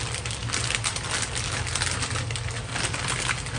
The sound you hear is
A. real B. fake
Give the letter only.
A